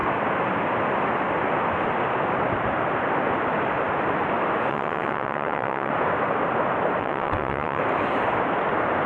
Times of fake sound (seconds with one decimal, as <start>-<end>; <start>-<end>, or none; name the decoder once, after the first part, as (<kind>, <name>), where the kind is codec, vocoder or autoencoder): 4.7-5.9 (vocoder, WaveNeXt); 7.0-7.8